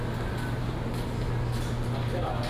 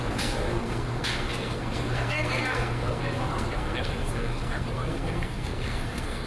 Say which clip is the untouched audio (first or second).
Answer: first